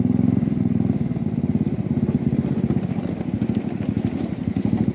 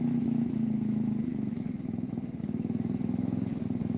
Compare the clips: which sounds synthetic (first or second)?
second